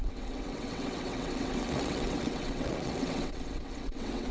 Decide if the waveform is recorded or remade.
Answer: remade